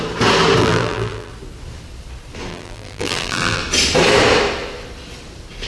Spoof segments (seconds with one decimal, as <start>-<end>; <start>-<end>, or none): 0.6-1.3; 2.5-3.6